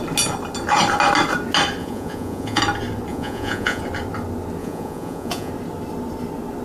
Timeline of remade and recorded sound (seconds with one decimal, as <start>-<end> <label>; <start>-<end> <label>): 0.0-1.8 recorded; 1.8-2.6 remade; 2.6-3.1 recorded; 3.1-3.8 remade; 3.8-4.6 recorded; 4.6-5.5 remade; 5.5-6.6 recorded